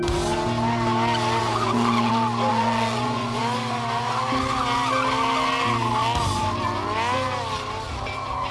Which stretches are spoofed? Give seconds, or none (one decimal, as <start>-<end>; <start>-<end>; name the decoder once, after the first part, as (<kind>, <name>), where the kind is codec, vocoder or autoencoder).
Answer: 1.4-2.1 (vocoder, Vocos); 2.5-3.4